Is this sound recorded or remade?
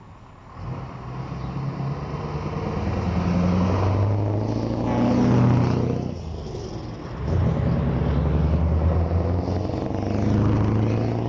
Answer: recorded